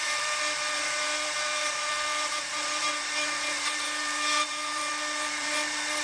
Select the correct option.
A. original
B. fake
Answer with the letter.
B